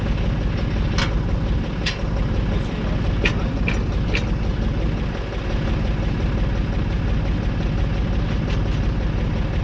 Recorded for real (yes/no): yes